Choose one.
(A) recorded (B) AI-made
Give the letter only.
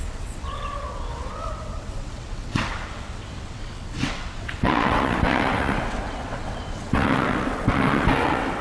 B